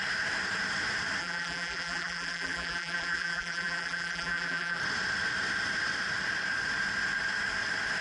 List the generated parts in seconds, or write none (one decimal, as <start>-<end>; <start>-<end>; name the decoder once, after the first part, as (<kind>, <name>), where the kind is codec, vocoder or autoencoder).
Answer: 1.2-4.8 (vocoder, BigVGAN v2)

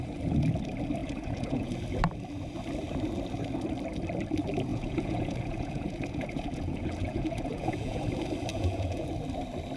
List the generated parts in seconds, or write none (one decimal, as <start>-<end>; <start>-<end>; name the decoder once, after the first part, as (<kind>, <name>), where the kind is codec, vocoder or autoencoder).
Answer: 1.0-1.7 (vocoder, Vocos); 4.7-8.0; 8.5-9.1

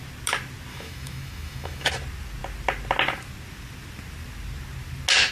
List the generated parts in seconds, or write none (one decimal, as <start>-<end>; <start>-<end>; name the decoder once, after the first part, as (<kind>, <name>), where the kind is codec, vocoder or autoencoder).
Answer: 0.7-1.9 (autoencoder, DAC-VAE)

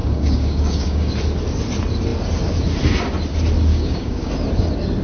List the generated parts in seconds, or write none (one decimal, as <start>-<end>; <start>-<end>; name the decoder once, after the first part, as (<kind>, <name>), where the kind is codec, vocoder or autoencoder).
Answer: 0.0-1.1 (codec, DAC); 3.7-4.3

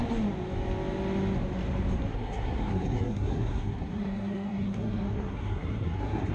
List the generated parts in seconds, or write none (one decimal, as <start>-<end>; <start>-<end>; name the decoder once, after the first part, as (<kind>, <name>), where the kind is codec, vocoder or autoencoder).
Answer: 2.1-6.3 (codec, SNAC)

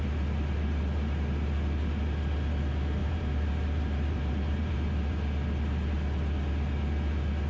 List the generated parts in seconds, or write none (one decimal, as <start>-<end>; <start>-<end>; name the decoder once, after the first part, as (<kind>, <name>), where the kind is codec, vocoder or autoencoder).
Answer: 3.0-5.2 (vocoder, BigVGAN v2)

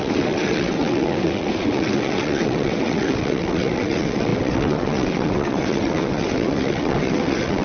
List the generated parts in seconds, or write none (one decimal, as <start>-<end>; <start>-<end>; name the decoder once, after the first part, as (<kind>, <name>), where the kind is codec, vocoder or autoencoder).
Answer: 0.0-7.6 (vocoder, WaveNeXt)

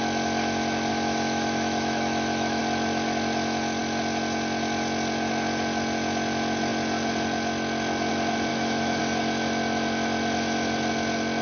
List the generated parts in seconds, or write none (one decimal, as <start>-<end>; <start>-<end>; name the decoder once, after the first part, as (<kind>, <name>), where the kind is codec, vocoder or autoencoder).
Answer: 0.9-2.6 (autoencoder, DAC-VAE); 8.5-9.0